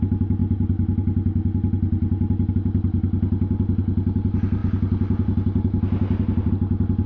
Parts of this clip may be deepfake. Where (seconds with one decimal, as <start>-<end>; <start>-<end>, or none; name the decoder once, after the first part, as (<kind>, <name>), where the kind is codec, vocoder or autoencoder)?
none